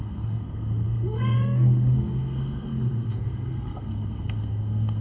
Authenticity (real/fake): fake